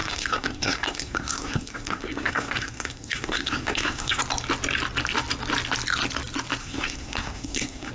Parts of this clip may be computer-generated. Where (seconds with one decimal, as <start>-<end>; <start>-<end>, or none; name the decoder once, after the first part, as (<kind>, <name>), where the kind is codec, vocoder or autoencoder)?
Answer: 0.0-4.2 (codec, SNAC); 6.6-7.9